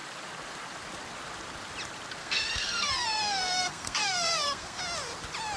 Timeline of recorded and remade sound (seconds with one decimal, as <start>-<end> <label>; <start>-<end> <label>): 0.0-2.2 recorded; 2.2-4.8 remade; 4.8-5.6 recorded